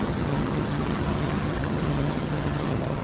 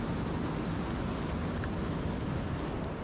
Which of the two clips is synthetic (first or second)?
first